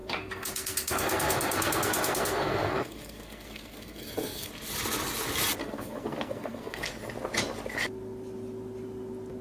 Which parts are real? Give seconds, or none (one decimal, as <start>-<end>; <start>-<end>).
4.5-5.6; 6.9-9.4